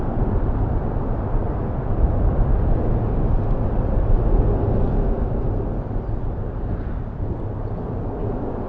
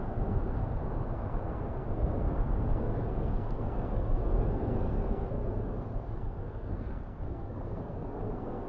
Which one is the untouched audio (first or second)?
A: first